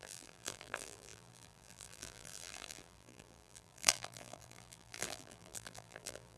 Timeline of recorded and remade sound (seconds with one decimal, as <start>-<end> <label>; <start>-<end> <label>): 0.0-6.4 remade